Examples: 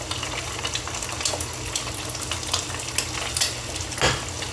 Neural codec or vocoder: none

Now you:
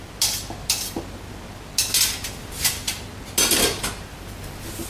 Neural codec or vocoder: none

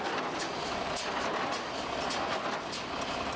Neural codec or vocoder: none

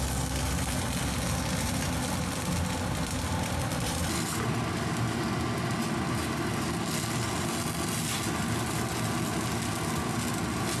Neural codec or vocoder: none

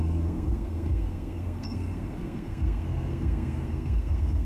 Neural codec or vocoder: codec, SNAC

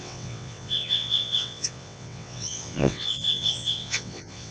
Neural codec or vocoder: vocoder, WaveNeXt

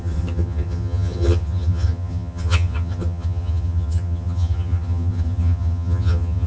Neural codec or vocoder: vocoder, HiFi-GAN